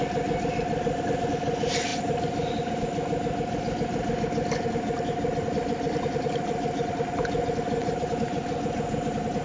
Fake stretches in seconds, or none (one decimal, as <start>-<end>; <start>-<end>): 7.8-8.4